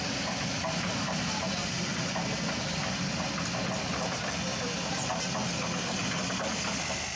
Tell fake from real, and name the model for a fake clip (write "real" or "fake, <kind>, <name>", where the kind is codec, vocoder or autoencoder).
real